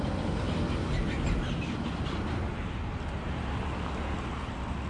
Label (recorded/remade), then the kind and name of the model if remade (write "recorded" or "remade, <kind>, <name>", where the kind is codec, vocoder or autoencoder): recorded